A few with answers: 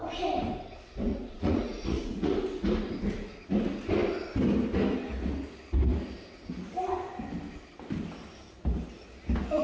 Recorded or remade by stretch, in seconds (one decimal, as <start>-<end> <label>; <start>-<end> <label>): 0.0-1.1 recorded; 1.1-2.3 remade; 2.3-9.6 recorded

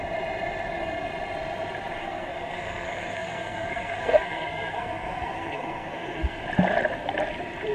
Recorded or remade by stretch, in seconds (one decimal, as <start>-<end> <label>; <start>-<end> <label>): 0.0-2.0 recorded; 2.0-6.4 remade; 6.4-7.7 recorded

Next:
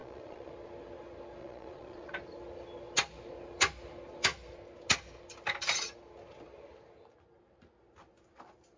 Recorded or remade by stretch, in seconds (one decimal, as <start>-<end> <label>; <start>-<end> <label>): 0.0-0.5 remade; 0.5-1.4 recorded; 1.4-2.1 remade; 2.1-8.8 recorded

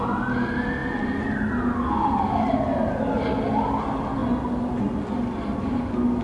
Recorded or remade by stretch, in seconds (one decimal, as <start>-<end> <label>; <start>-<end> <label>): 0.0-6.2 recorded